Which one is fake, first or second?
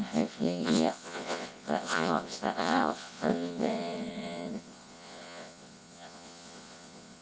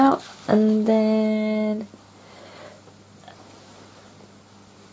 first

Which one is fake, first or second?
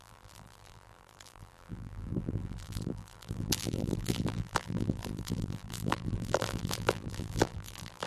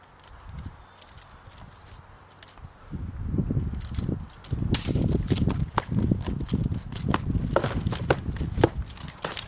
first